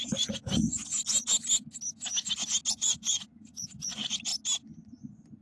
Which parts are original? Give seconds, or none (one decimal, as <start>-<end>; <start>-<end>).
0.8-2.7; 4.3-4.9

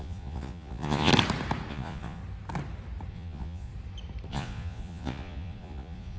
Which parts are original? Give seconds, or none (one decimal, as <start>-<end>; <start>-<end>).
1.1-1.7; 2.2-3.1; 3.7-4.3

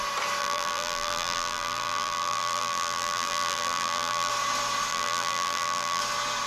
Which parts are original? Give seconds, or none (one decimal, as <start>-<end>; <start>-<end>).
0.0-0.4; 4.3-4.9; 6.0-6.5

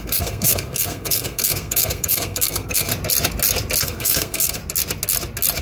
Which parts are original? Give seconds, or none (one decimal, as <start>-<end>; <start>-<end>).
2.9-3.8; 4.6-5.6

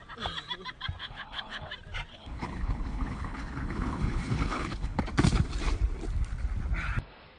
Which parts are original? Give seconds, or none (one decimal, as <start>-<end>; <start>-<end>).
0.0-1.0; 1.7-2.1; 5.0-7.4